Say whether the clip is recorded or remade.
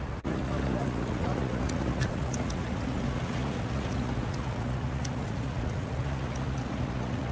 remade